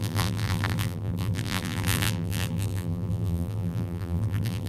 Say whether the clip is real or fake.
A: fake